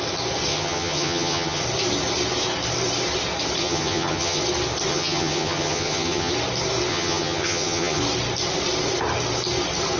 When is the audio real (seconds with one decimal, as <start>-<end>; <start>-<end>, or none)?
0.0-0.5; 1.6-3.6; 4.4-4.9; 6.3-6.9; 8.0-10.0